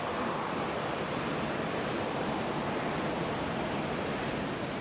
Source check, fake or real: fake